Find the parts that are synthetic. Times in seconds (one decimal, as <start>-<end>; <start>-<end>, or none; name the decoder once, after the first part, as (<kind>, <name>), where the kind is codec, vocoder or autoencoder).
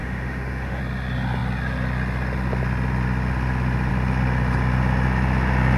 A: 0.0-0.8 (autoencoder, DAC-VAE)